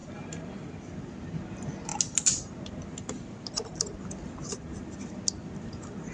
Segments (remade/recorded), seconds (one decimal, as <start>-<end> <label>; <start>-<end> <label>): 0.0-6.1 recorded

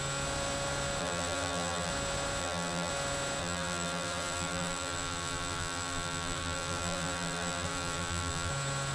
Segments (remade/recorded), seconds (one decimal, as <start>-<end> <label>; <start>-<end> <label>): 0.0-1.0 recorded; 1.0-1.9 remade; 1.9-2.4 recorded; 2.4-2.9 remade; 2.9-3.4 recorded; 3.4-8.5 remade; 8.5-8.9 recorded